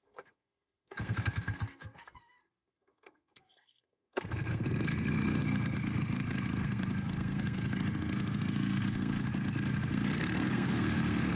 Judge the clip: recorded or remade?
remade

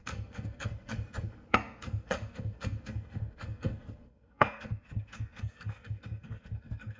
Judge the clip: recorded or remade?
remade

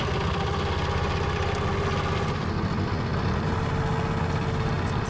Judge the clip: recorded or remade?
recorded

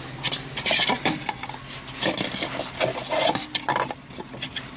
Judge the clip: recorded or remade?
recorded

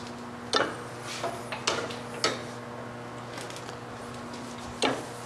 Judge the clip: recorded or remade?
recorded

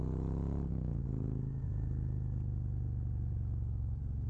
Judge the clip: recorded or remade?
recorded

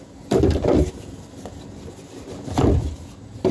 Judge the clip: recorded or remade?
recorded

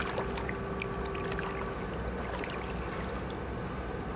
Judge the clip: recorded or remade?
recorded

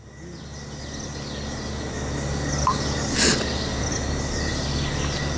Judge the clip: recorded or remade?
recorded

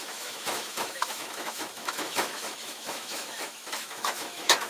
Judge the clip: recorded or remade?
remade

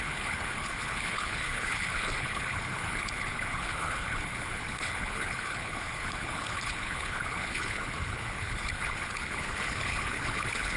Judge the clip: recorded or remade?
remade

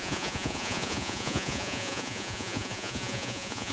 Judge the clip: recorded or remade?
remade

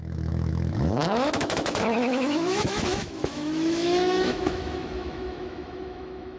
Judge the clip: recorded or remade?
remade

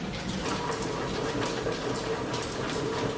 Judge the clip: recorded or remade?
recorded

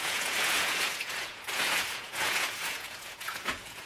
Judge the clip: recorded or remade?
remade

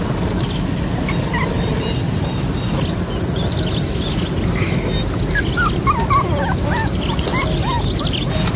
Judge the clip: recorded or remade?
recorded